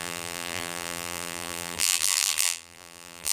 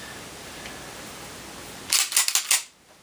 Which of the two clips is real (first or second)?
second